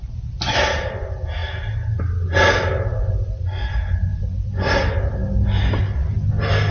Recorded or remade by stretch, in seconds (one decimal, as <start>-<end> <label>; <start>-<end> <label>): 0.0-6.7 recorded